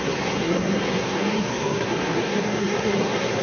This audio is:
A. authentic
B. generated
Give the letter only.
B